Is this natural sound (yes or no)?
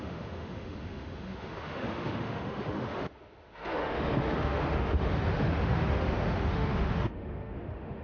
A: no